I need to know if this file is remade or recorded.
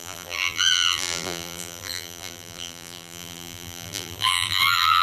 remade